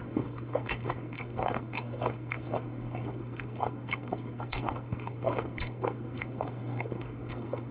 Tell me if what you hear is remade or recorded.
remade